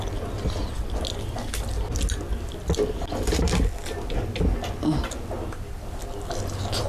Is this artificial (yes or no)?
no